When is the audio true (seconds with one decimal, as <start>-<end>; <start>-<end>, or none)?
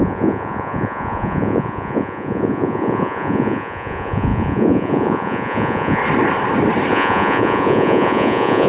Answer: 6.0-6.9